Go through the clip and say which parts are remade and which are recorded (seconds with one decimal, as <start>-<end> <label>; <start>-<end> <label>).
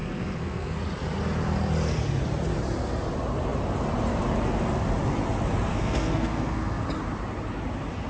0.0-0.8 remade; 0.8-5.7 recorded; 5.7-6.8 remade; 6.8-8.1 recorded